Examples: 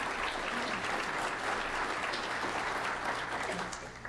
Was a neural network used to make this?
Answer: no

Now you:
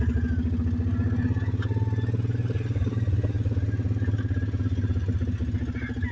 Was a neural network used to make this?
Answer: no